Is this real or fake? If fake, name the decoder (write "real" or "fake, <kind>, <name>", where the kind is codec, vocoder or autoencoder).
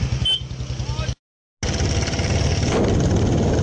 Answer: real